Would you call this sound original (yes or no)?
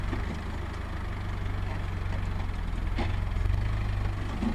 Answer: yes